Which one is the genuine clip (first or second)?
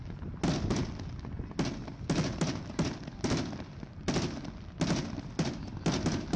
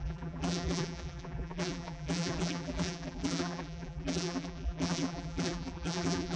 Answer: first